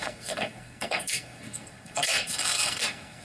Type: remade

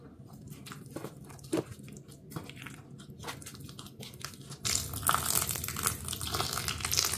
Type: recorded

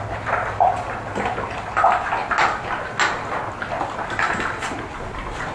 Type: recorded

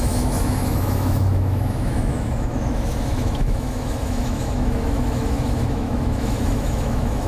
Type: remade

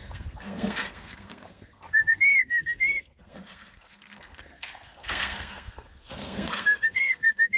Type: remade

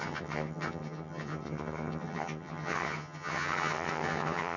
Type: remade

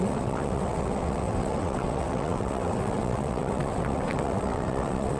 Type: remade